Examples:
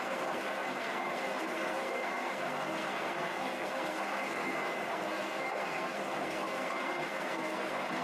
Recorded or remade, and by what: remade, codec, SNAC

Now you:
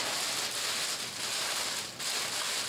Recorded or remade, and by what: recorded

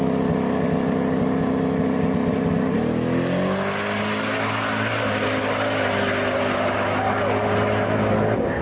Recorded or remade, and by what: recorded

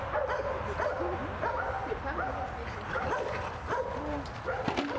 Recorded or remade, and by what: recorded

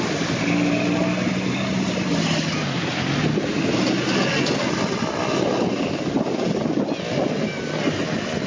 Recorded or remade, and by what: recorded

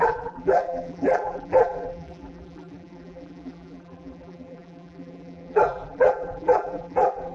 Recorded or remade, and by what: remade, vocoder, BigVGAN v2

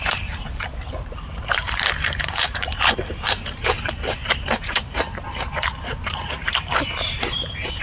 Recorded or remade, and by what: remade, vocoder, BigVGAN v2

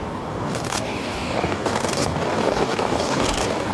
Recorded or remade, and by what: remade, codec, DAC